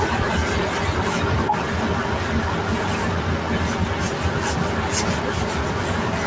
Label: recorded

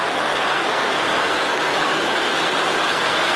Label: remade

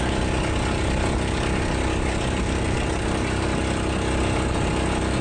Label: recorded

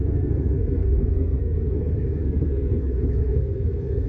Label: remade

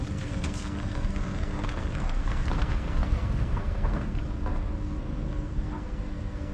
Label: remade